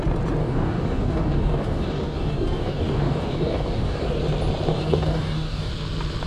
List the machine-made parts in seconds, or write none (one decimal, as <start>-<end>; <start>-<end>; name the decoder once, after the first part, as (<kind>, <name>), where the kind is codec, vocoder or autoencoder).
0.4-4.2 (codec, DAC); 4.7-5.7